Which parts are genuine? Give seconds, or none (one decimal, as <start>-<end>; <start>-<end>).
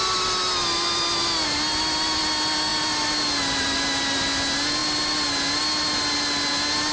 0.0-6.9